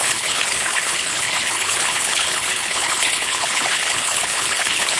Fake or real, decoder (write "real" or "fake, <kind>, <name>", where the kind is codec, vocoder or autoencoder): fake, codec, HILCodec